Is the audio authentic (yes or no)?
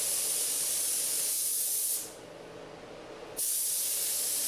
yes